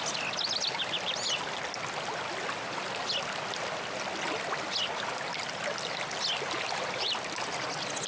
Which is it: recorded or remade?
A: recorded